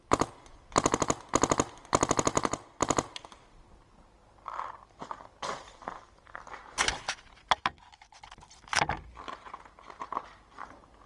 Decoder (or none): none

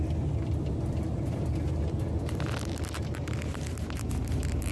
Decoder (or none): none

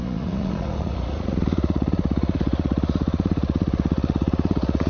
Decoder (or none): vocoder, Vocos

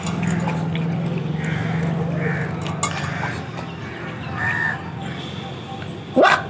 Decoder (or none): none